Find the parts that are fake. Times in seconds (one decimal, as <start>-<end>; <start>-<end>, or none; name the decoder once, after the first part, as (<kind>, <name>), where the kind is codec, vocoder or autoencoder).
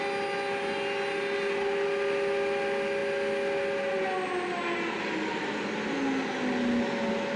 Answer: none